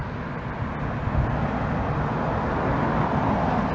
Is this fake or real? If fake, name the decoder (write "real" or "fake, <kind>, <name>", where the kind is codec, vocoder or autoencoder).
real